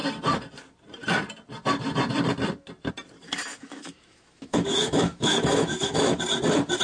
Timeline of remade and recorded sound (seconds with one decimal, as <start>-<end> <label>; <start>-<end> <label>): 0.0-3.5 recorded; 3.5-6.2 remade; 6.2-6.8 recorded